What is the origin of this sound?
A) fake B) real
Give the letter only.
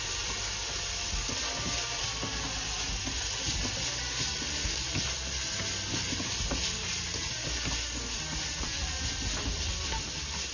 B